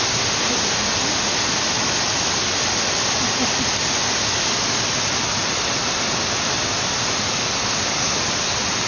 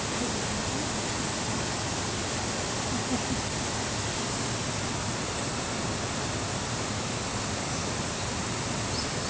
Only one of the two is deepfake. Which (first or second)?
first